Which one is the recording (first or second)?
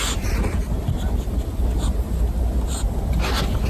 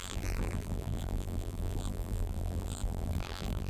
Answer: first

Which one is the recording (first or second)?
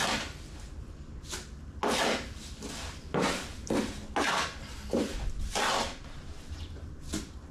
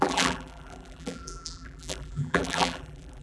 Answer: first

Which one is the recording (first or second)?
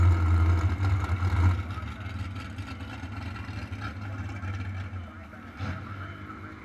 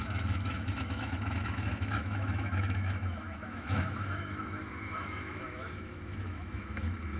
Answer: first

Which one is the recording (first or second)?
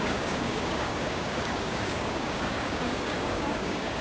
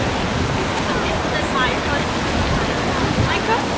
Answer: second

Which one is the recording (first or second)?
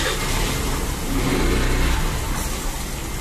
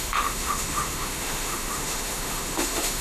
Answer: first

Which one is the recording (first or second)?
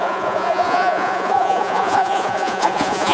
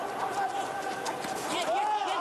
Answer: second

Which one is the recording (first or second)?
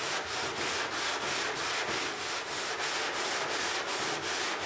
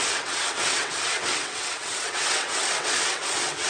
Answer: first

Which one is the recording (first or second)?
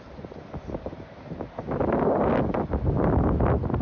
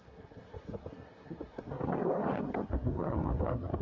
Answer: first